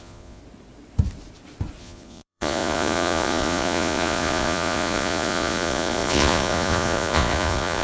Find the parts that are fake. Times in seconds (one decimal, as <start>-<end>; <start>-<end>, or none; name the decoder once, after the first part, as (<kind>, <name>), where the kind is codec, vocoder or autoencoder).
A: 0.0-0.4 (vocoder, Vocos); 1.8-7.8